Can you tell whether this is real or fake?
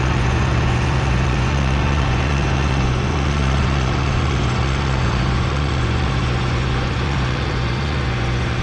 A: fake